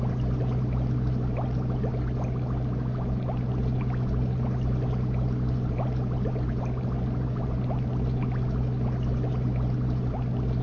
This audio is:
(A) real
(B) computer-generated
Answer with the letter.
A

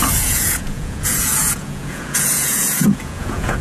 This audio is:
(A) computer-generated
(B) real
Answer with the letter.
A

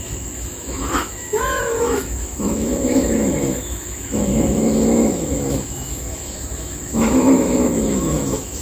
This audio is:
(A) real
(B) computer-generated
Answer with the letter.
B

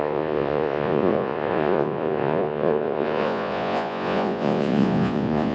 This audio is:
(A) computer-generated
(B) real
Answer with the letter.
A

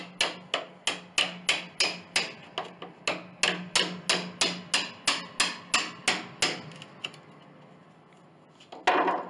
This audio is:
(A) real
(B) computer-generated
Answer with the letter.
A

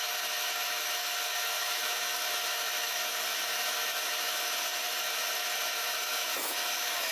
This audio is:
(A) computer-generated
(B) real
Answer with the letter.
A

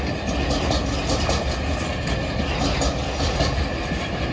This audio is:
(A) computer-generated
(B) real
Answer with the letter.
B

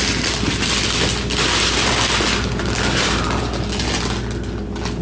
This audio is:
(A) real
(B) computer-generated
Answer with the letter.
A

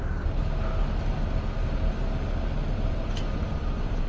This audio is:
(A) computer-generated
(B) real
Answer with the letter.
B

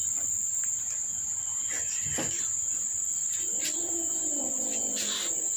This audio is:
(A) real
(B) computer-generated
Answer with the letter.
A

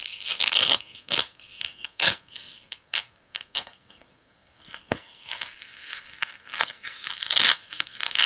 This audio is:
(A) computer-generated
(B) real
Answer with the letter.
A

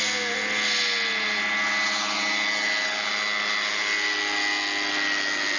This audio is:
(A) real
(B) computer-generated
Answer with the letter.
A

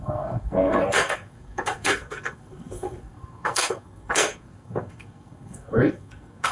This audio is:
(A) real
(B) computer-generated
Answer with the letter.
B